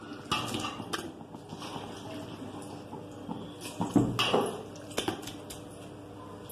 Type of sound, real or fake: real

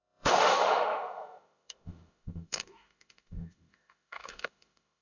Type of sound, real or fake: fake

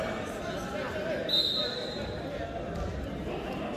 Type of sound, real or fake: real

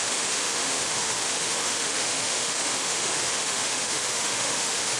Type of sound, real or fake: fake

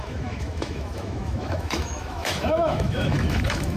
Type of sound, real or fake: fake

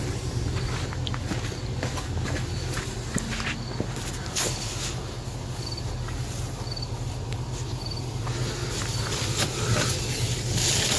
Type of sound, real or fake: real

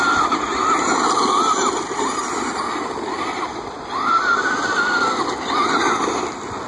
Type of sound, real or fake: real